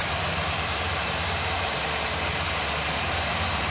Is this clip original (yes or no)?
no